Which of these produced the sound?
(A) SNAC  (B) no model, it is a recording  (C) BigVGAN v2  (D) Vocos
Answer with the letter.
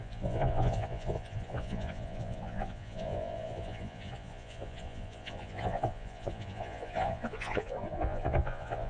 D